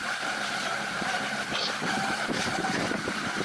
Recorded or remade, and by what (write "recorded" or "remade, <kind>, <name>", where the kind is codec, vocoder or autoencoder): remade, vocoder, BigVGAN v2